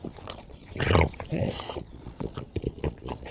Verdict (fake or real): fake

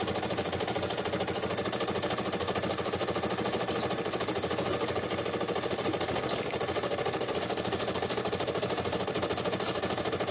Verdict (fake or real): real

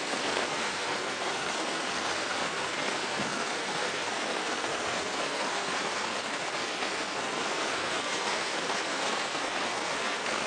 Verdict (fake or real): fake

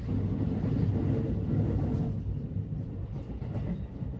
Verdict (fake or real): real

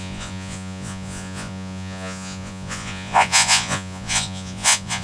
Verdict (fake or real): fake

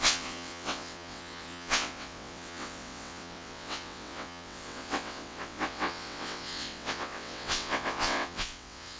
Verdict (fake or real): fake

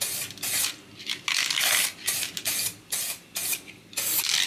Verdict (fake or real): real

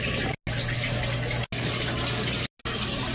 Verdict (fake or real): real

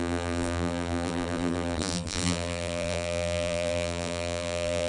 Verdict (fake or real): fake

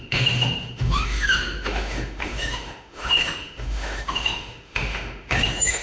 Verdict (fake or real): fake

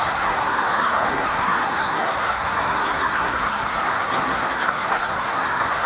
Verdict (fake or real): fake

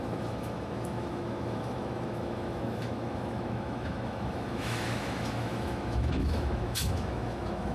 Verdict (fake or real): fake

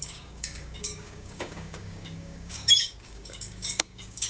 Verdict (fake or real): fake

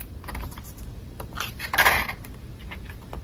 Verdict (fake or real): fake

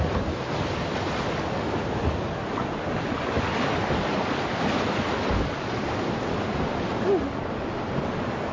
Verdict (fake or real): real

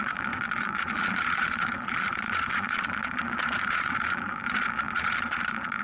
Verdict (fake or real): fake